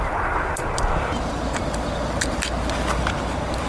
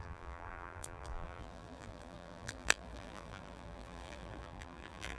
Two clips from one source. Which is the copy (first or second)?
second